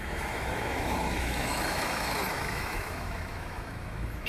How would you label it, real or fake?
fake